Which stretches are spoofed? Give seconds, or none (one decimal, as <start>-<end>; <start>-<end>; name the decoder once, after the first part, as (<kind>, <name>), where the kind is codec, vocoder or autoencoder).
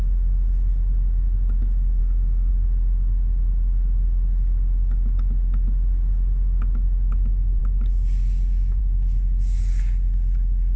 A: 2.0-2.5 (autoencoder, DAC-VAE)